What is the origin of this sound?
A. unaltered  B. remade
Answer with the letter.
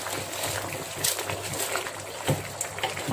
A